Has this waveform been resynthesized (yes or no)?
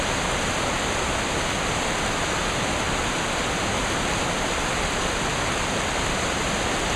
no